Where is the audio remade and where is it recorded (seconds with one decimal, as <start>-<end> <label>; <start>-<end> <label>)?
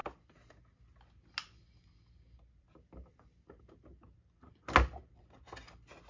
0.0-6.1 recorded